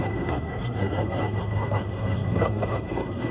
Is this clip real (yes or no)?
no